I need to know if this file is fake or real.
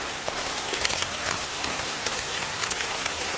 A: fake